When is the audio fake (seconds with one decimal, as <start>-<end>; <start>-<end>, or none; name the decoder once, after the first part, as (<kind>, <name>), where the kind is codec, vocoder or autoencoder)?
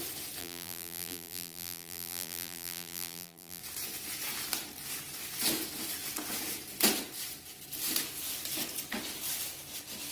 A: 0.4-3.6 (vocoder, BigVGAN v2)